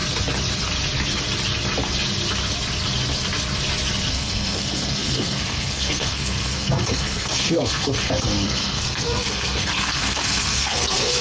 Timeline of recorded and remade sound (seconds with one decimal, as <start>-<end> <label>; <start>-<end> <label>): 0.0-4.1 recorded; 4.1-11.2 remade